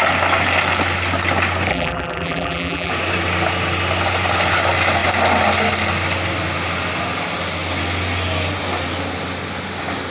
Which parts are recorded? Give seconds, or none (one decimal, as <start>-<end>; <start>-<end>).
0.0-1.7; 2.9-10.1